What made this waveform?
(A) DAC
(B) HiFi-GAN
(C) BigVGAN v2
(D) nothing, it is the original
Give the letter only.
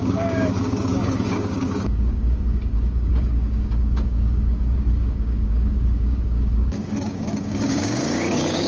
A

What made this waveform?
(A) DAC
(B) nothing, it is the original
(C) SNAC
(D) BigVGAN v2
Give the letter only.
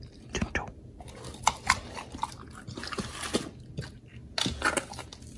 B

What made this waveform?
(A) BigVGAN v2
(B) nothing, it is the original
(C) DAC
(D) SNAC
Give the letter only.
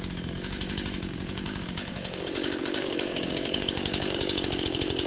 C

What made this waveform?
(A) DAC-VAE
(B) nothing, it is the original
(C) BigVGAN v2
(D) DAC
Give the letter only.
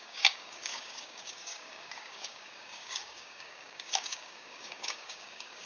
D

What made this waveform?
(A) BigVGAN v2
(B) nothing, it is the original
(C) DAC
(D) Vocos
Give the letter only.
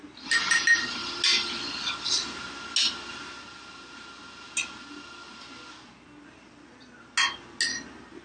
B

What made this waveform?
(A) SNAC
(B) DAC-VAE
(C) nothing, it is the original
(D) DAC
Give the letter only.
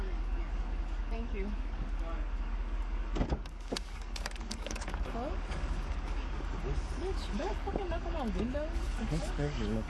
D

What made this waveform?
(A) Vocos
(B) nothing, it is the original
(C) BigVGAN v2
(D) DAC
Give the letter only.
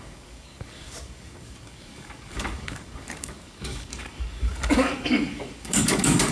D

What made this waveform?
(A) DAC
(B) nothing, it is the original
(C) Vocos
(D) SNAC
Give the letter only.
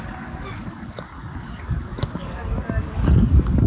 A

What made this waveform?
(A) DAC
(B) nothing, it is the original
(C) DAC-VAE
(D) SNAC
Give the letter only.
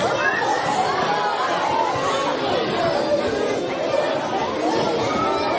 B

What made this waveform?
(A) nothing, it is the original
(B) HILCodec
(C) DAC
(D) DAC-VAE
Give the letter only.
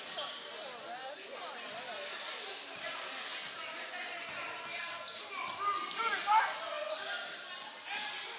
A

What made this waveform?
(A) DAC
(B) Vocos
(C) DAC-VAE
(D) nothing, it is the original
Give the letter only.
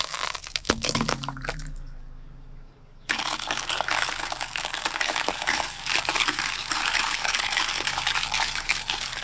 A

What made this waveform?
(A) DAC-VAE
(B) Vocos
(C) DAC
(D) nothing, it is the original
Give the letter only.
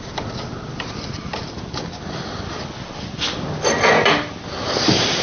D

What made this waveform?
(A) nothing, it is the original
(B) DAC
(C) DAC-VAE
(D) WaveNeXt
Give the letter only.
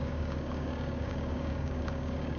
B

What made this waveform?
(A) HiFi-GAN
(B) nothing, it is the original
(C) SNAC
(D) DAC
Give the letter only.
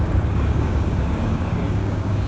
D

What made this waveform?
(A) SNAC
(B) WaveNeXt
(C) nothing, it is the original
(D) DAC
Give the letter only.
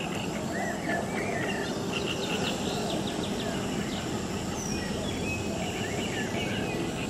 C